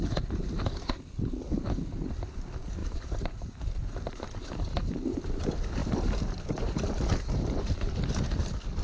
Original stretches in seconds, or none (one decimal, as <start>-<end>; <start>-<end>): 0.0-2.8; 4.9-8.8